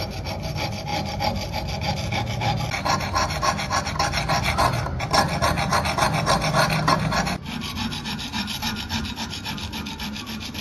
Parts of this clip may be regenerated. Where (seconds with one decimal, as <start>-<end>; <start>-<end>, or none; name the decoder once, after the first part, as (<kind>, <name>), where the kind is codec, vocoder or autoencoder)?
none